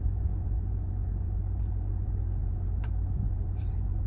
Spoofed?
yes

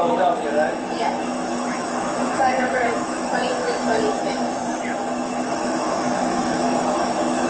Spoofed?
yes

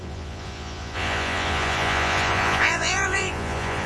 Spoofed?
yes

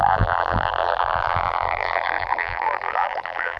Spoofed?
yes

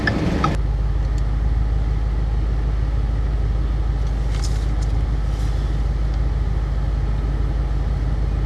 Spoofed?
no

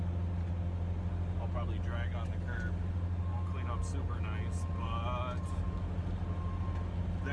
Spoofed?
no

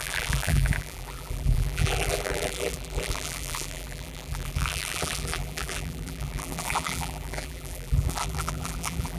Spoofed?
yes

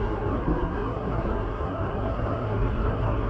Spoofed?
yes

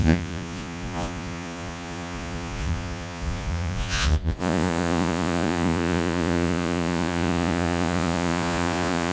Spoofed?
yes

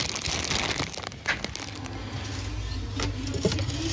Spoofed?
no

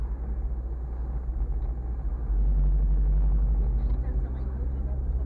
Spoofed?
no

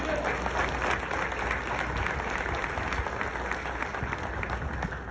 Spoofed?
no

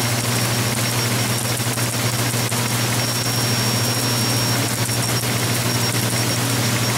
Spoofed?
no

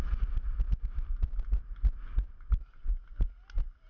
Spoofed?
no